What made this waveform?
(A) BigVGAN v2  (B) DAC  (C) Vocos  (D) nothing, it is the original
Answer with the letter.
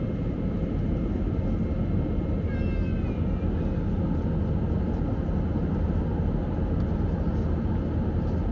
D